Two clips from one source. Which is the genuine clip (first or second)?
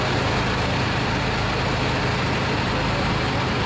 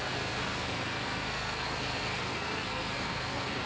first